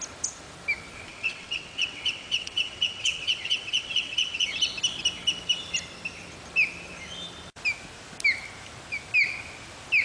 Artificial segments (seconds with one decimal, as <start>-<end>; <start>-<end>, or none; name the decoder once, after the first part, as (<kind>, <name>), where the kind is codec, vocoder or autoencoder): 1.1-4.5 (vocoder, WaveNeXt)